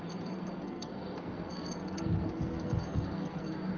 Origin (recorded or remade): remade